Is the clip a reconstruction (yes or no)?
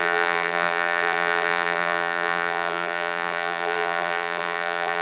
yes